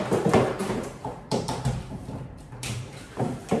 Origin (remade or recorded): remade